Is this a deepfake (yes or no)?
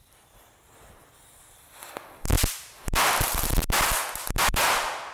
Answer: yes